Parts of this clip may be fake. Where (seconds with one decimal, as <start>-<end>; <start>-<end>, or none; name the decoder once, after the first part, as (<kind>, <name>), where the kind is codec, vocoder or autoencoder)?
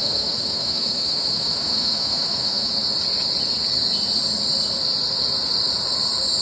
0.0-2.7 (autoencoder, DAC-VAE)